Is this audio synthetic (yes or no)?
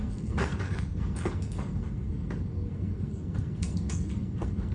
yes